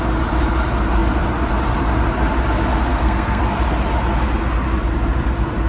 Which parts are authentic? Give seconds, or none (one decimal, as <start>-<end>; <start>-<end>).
0.0-2.9; 3.4-5.7